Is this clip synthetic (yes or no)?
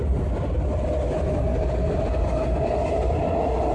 no